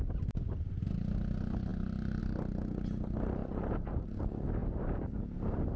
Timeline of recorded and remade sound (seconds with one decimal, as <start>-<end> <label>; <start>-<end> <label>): 0.0-1.7 recorded; 1.7-2.2 remade; 2.2-3.4 recorded; 3.4-4.1 remade; 4.1-4.6 recorded; 4.6-5.2 remade; 5.2-5.8 recorded